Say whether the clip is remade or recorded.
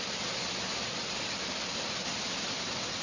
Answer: recorded